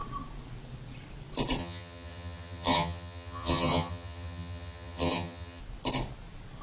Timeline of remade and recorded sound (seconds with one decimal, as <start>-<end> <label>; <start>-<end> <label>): 0.0-1.6 recorded; 1.6-5.6 remade; 5.6-6.6 recorded